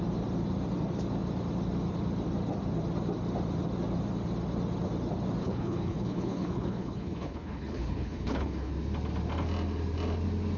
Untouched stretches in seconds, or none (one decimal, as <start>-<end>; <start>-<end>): 0.0-5.4; 8.7-10.6